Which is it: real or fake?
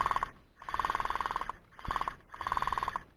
real